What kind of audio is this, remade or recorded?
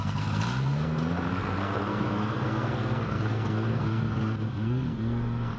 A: remade